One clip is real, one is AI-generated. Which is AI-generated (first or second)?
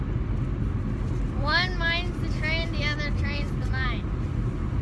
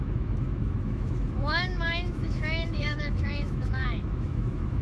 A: second